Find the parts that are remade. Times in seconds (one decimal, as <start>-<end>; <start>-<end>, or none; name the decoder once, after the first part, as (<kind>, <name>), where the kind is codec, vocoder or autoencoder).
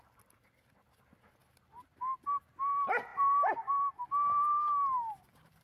none